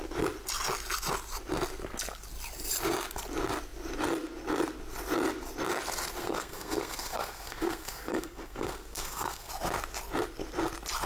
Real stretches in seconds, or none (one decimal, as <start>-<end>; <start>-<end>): 0.0-6.2; 9.5-11.1